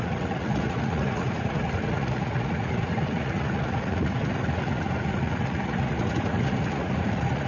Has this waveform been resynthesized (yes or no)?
yes